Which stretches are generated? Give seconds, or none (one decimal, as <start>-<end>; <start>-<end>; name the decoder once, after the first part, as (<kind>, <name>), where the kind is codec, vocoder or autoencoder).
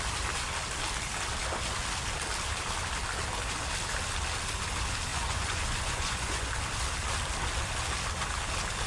5.1-6.5 (vocoder, Vocos)